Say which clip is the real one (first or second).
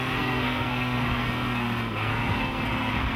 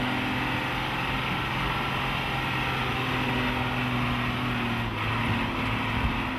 second